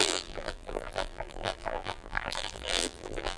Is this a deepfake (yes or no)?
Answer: yes